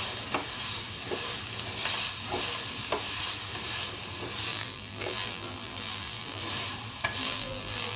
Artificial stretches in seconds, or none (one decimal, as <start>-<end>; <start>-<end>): 4.5-6.4; 7.2-8.0